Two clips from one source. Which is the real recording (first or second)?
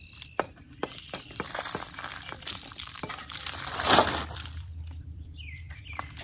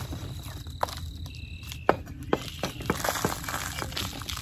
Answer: second